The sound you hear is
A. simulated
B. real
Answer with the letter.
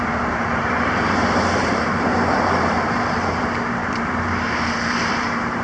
A